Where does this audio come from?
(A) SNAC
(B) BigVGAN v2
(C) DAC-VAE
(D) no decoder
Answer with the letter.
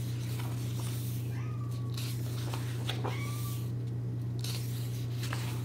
D